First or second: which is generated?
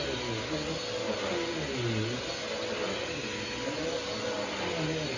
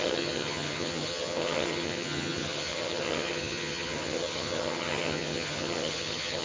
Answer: second